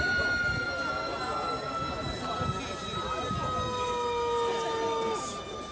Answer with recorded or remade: recorded